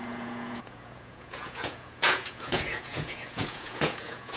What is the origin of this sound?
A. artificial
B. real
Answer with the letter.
A